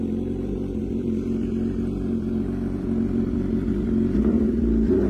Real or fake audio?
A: fake